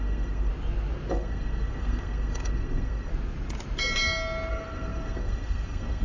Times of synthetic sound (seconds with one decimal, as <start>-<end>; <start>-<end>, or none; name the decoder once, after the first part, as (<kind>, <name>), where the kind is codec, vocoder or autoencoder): 0.0-0.5 (codec, SNAC); 1.1-3.1; 4.5-6.0